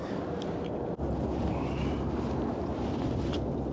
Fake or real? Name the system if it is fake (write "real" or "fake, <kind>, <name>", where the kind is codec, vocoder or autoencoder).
real